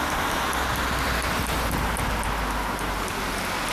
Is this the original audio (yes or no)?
yes